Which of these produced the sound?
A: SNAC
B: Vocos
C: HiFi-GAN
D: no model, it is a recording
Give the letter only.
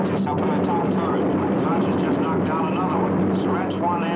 D